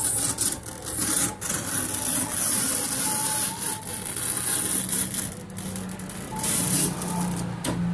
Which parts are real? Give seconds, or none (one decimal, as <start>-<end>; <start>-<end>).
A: 0.0-7.9